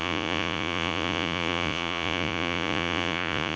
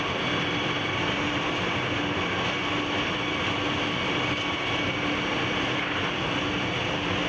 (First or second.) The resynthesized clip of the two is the first